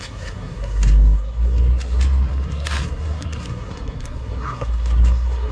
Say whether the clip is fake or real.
fake